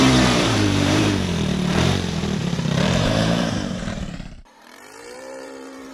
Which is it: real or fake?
fake